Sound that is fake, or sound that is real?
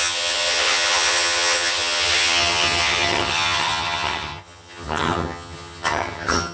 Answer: fake